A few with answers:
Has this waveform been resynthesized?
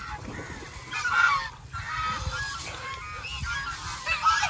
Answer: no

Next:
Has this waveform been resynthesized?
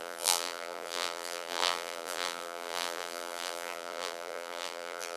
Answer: yes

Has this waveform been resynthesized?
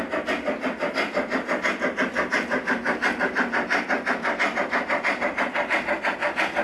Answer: yes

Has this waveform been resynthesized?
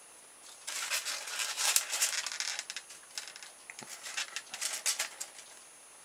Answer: no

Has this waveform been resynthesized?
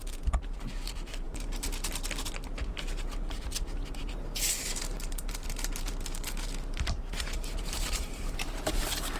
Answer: yes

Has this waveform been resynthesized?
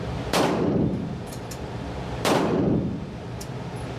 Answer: yes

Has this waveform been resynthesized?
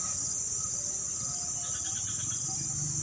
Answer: no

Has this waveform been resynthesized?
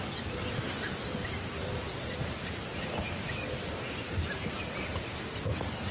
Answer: no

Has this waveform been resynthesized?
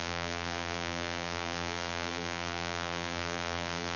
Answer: yes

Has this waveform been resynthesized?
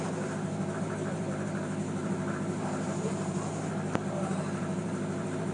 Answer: yes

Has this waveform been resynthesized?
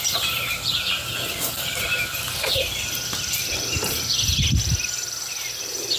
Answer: yes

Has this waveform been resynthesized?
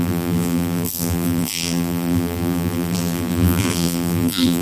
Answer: yes